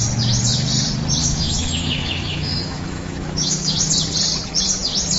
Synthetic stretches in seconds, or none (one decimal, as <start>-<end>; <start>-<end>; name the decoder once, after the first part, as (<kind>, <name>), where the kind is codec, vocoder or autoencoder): 1.2-3.9 (autoencoder, DAC-VAE)